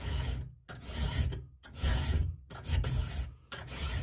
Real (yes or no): no